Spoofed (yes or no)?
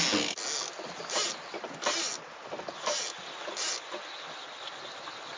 no